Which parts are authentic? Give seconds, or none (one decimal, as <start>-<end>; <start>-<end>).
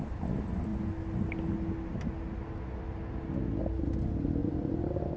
0.0-5.2